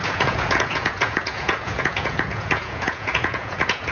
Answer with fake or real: fake